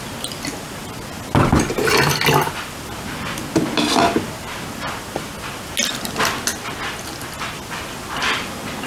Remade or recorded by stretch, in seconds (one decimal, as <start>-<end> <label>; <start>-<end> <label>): 0.0-8.9 recorded

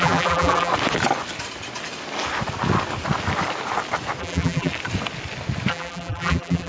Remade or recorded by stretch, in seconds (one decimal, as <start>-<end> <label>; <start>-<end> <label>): 0.0-0.7 remade; 0.7-4.2 recorded; 4.2-4.7 remade; 4.7-5.7 recorded; 5.7-6.7 remade

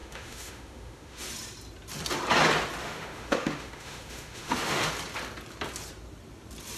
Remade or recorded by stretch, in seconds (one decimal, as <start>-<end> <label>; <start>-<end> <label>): 0.0-1.3 remade; 1.3-2.8 recorded; 2.8-4.9 remade; 4.9-6.8 recorded

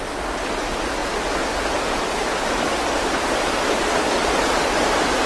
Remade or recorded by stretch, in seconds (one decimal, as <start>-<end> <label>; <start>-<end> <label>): 0.0-5.3 recorded

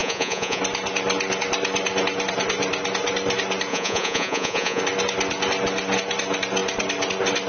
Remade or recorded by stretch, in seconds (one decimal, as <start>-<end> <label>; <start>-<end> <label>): 0.0-0.6 remade; 0.6-3.7 recorded; 3.7-4.8 remade; 4.8-7.5 recorded